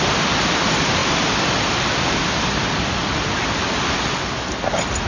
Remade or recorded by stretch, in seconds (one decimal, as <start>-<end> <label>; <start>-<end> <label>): 0.0-5.1 recorded